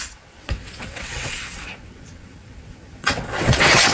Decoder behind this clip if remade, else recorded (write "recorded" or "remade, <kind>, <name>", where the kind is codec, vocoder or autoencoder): remade, vocoder, WaveNeXt